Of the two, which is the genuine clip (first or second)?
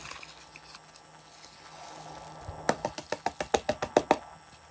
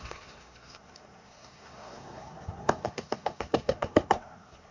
first